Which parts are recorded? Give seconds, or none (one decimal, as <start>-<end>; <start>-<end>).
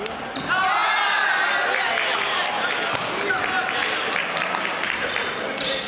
0.0-5.9